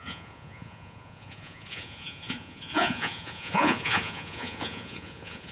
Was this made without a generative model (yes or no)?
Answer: no